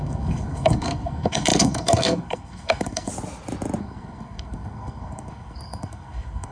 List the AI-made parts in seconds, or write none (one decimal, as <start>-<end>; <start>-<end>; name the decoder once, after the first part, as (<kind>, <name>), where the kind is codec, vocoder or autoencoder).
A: 0.0-3.1 (codec, SNAC); 3.8-6.5